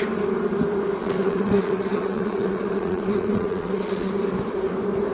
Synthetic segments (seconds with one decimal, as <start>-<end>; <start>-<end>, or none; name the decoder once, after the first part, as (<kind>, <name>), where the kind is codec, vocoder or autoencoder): 1.0-4.1 (vocoder, Vocos)